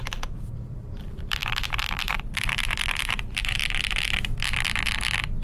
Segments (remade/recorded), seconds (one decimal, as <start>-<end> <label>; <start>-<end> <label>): 0.0-3.6 remade; 3.6-5.4 recorded